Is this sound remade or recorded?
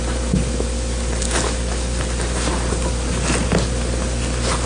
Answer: recorded